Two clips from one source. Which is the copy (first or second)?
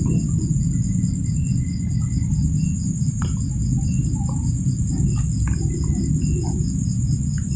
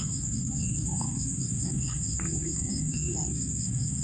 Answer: second